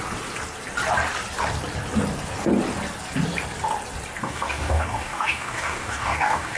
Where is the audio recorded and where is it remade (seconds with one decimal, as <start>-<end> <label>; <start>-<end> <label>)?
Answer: 0.0-4.2 recorded; 4.2-6.6 remade